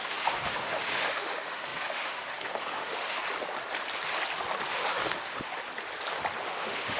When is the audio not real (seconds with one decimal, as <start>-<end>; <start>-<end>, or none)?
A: 0.0-3.2; 4.7-5.6; 6.4-7.0